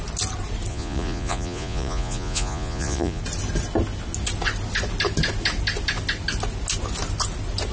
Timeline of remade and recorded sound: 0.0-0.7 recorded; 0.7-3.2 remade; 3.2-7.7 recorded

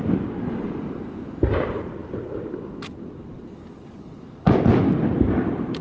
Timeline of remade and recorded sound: 0.0-5.8 recorded

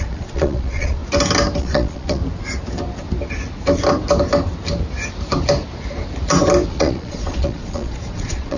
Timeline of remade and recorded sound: 0.0-1.0 remade; 1.0-1.6 recorded; 1.6-2.2 remade; 2.2-6.7 recorded; 6.7-8.6 remade

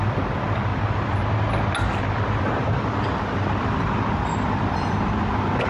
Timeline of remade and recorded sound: 0.0-0.7 remade; 0.7-2.2 recorded; 2.2-5.7 remade